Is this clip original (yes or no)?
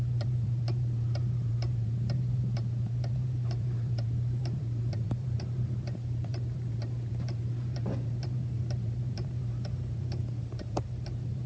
no